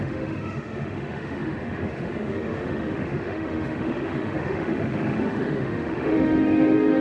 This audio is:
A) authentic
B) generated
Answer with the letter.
B